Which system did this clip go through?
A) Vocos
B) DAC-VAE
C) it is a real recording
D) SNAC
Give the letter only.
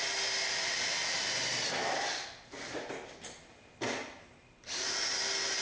C